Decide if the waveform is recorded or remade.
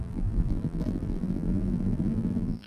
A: remade